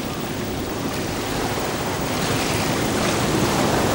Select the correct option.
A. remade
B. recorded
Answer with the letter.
A